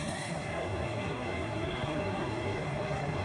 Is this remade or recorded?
remade